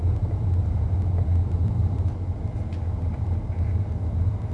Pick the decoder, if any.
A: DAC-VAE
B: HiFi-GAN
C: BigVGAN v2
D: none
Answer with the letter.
D